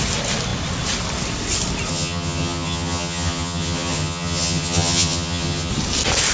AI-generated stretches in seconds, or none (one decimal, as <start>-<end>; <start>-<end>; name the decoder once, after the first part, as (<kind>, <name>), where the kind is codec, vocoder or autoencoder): 1.9-5.7 (vocoder, HiFi-GAN)